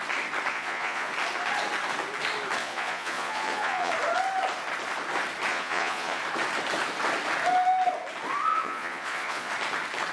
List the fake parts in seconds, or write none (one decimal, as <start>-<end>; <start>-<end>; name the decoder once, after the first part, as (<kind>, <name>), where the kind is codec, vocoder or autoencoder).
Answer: 0.5-1.1 (vocoder, Vocos); 2.6-3.9; 5.5-6.2; 8.5-9.5